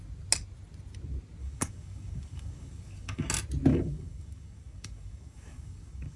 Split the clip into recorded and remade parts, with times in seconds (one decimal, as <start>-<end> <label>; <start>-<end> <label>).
0.0-1.4 recorded; 1.4-3.3 remade; 3.3-3.7 recorded; 3.7-6.2 remade